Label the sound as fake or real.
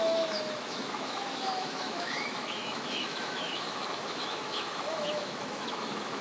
fake